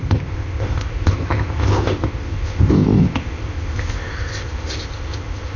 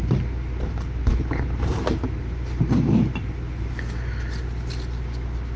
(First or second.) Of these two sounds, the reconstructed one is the first